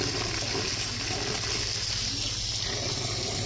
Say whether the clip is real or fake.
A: real